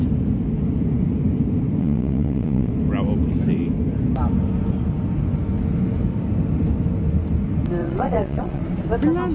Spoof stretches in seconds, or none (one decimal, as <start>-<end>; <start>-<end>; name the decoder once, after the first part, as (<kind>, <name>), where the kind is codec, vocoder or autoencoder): 1.8-2.7 (vocoder, WaveNeXt); 7.8-8.6